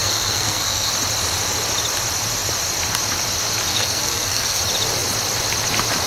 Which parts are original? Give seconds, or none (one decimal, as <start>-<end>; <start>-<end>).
0.9-3.7; 4.6-6.1